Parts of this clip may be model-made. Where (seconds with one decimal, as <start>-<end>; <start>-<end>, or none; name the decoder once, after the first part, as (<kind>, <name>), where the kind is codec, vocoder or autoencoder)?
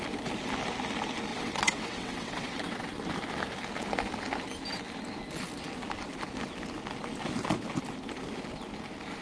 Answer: 1.3-3.0 (vocoder, WaveNeXt)